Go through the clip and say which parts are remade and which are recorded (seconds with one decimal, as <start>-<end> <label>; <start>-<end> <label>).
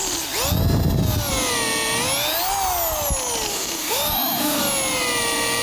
0.0-3.5 recorded; 3.5-4.6 remade; 4.6-5.6 recorded